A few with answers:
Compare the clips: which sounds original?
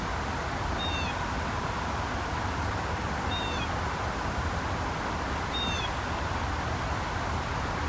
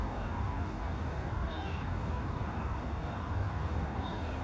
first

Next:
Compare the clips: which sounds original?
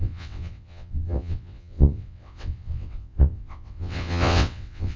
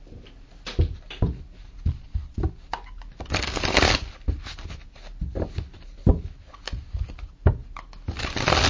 second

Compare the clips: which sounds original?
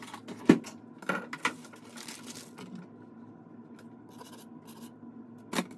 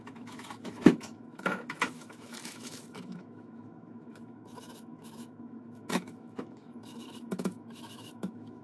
first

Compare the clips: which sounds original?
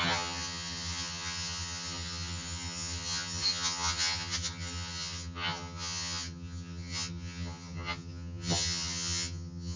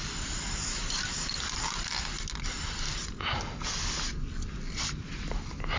second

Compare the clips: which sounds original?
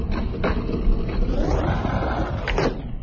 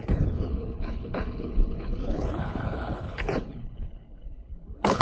first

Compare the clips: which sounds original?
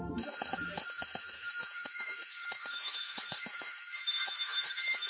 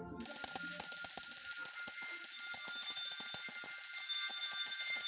second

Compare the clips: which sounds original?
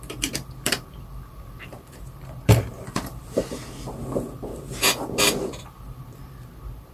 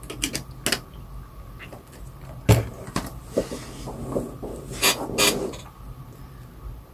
second